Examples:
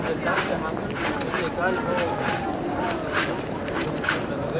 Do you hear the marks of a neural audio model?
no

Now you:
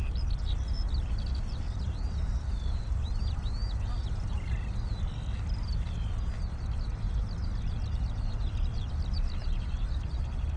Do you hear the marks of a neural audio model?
no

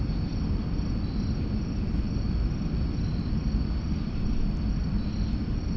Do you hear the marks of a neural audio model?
no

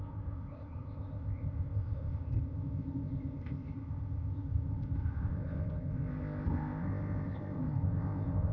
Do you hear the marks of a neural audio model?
yes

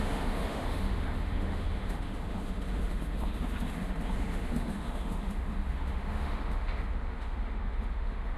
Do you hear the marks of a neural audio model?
yes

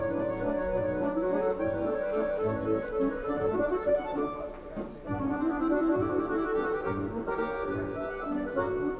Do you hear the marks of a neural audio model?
no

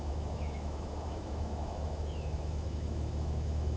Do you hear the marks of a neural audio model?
yes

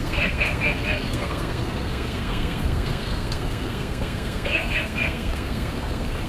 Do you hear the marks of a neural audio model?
yes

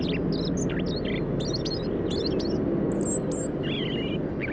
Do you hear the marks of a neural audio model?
no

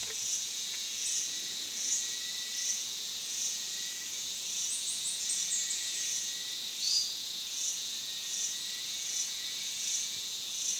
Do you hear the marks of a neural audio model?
yes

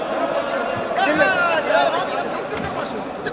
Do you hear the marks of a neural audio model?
no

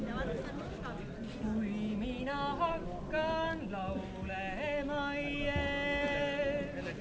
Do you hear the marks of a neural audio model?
no